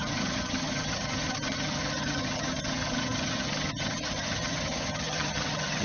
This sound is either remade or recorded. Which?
remade